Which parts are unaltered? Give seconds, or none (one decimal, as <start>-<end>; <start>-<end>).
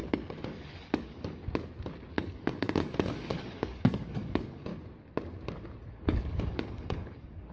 1.4-2.1; 4.7-5.9